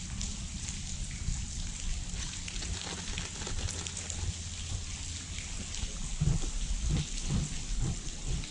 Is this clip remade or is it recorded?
recorded